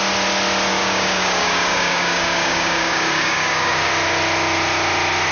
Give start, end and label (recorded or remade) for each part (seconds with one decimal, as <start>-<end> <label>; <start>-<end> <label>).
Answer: 0.0-0.7 recorded; 0.7-3.9 remade; 3.9-5.3 recorded